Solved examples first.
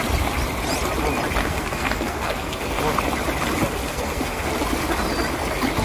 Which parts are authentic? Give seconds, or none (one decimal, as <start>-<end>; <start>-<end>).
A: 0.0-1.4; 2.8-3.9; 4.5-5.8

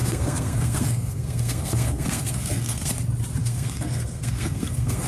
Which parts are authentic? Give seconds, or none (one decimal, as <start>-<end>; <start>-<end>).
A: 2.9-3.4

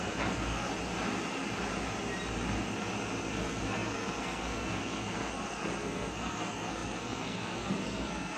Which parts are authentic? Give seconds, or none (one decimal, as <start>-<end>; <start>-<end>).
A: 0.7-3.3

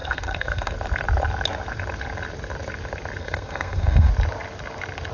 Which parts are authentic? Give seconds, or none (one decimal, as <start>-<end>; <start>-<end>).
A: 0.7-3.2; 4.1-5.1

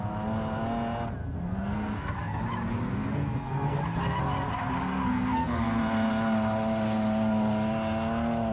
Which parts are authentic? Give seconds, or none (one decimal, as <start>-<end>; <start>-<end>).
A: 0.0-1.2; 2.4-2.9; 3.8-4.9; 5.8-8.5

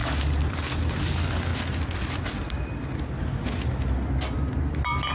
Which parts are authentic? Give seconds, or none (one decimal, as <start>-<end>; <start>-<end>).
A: 0.0-5.1